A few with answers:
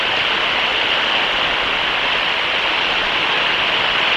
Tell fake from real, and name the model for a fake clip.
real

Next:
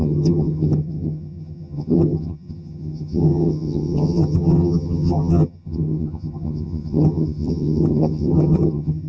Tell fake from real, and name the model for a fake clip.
fake, vocoder, HiFi-GAN